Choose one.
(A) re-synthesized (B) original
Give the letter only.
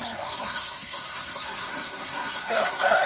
A